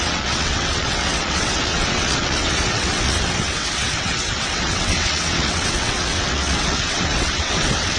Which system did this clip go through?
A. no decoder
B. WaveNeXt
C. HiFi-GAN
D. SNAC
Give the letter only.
B